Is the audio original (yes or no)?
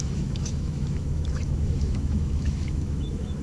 no